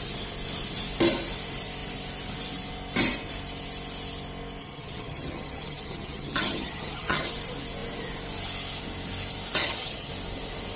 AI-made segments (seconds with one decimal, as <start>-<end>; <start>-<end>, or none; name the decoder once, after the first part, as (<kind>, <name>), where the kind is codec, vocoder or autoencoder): 4.6-7.3 (vocoder, HiFi-GAN); 9.6-10.1